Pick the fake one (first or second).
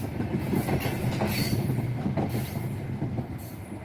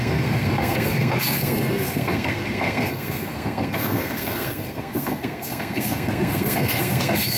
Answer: second